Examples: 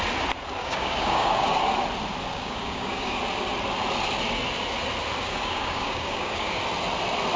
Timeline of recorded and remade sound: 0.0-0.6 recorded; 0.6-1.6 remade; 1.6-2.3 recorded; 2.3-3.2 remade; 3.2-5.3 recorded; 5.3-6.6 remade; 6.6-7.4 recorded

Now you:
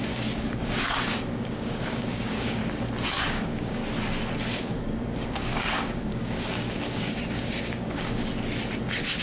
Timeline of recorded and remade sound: 0.0-2.6 remade; 2.6-3.1 recorded; 3.1-3.8 remade; 3.8-4.6 recorded; 4.6-8.3 remade; 8.3-9.2 recorded

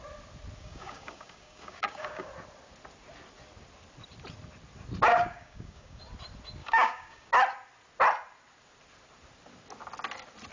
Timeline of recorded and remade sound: 0.0-0.6 recorded; 0.6-2.3 remade; 2.3-5.1 recorded; 5.1-6.0 remade; 6.0-6.6 recorded; 6.6-7.3 remade; 7.3-10.5 recorded

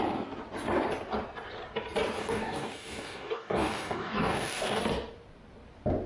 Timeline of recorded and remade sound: 0.0-2.2 recorded; 2.2-4.8 remade; 4.8-6.1 recorded

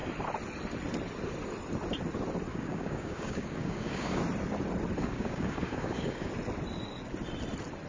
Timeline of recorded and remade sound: 0.0-2.5 recorded; 2.5-4.2 remade; 4.2-5.0 recorded; 5.0-6.3 remade; 6.3-7.9 recorded

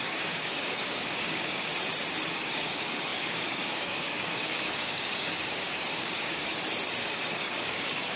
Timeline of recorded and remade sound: 0.0-1.7 remade; 1.7-2.3 recorded; 2.3-6.5 remade; 6.5-7.0 recorded; 7.0-8.2 remade

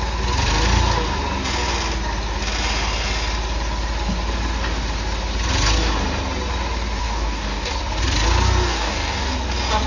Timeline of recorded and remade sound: 0.0-7.0 recorded; 7.0-7.7 remade; 7.7-8.6 recorded; 8.6-9.3 remade; 9.3-9.9 recorded

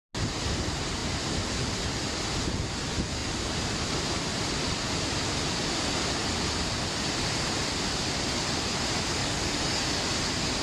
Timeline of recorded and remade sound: 0.0-9.2 recorded; 9.2-9.8 remade; 9.8-10.6 recorded